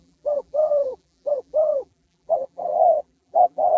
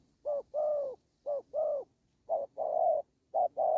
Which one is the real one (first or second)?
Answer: second